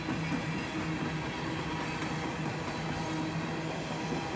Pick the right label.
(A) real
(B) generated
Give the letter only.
A